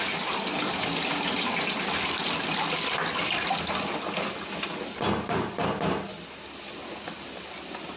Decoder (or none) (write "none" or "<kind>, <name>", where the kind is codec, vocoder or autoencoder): none